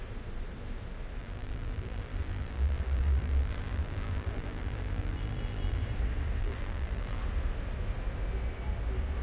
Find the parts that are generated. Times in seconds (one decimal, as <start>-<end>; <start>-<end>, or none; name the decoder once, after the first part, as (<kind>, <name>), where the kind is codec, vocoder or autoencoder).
1.2-5.8 (vocoder, BigVGAN v2); 6.4-7.2